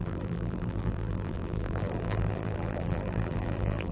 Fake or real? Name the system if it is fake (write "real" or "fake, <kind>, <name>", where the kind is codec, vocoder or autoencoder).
fake, vocoder, BigVGAN v2